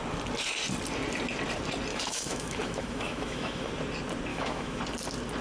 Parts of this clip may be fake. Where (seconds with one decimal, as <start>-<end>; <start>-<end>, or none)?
1.9-3.7; 4.3-4.8